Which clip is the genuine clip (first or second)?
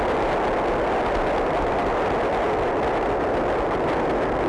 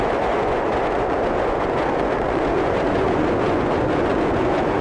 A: first